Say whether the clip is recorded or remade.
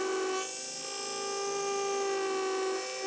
recorded